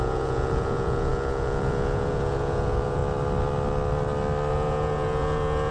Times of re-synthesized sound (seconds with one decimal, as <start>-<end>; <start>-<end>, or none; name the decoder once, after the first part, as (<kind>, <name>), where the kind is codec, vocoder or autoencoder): 0.0-3.0 (vocoder, Vocos); 4.5-5.7